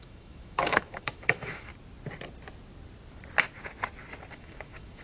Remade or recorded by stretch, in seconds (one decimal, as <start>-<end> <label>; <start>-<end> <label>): 0.0-1.7 remade; 1.7-4.3 recorded; 4.3-5.0 remade